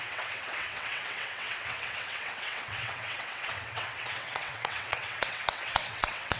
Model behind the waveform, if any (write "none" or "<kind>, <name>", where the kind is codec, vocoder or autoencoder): vocoder, WaveNeXt